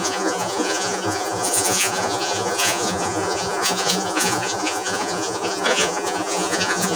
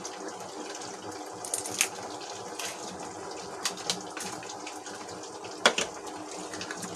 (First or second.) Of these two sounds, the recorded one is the second